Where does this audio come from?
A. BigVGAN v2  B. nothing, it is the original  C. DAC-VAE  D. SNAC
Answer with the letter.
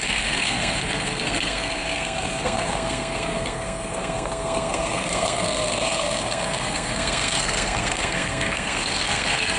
D